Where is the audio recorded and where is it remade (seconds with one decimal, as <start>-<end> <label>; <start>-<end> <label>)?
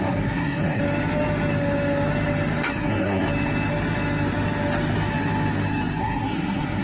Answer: 0.0-0.8 remade; 0.8-2.7 recorded; 2.7-3.3 remade; 3.3-6.0 recorded; 6.0-6.8 remade